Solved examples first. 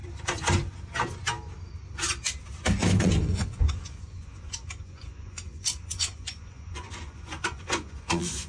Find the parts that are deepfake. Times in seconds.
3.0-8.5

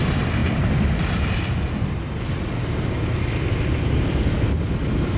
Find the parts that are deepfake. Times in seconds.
0.4-3.5

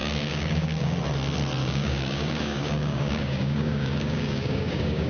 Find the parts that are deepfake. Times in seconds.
0.0-0.9; 1.6-5.1

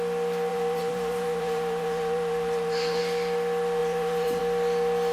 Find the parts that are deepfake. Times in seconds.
0.5-3.0; 3.8-4.4

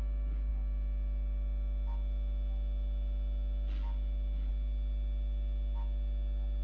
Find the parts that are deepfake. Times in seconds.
none